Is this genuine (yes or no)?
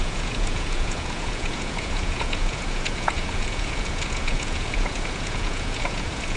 no